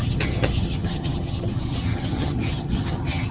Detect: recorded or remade remade